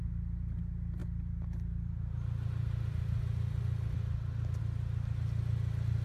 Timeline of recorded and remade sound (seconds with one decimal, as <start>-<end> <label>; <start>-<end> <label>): 0.0-6.0 recorded

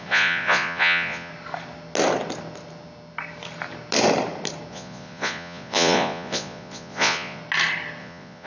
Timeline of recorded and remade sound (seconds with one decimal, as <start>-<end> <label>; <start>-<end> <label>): 0.0-1.3 remade; 1.3-4.7 recorded; 4.7-7.4 remade; 7.4-8.0 recorded; 8.0-8.5 remade

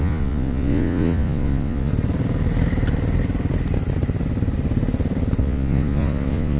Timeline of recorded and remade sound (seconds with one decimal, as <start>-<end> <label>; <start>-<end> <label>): 0.0-1.9 remade; 1.9-5.4 recorded; 5.4-6.6 remade

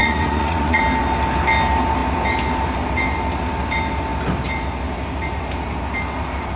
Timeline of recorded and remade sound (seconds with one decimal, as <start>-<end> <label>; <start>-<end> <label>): 0.0-0.8 remade; 0.8-6.6 recorded

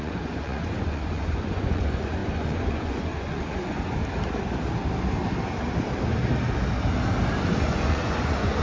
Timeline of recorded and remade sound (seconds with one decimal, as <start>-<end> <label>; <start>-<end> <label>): 0.0-4.0 remade; 4.0-7.6 recorded; 7.6-8.6 remade

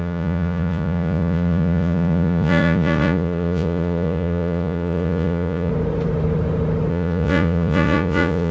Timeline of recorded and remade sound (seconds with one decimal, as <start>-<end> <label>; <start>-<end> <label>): 0.0-5.7 remade; 5.7-6.9 recorded; 6.9-8.5 remade

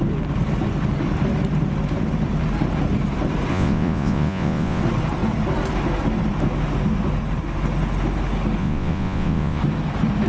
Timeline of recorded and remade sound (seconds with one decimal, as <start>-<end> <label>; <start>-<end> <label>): 0.0-3.5 recorded; 3.5-4.8 remade; 4.8-8.6 recorded; 8.6-9.6 remade; 9.6-10.3 recorded